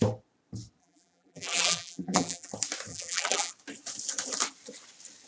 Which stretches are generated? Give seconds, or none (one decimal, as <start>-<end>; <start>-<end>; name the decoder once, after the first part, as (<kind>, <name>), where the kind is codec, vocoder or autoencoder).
0.8-2.5 (vocoder, BigVGAN v2); 2.9-3.5